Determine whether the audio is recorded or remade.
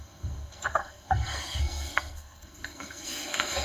remade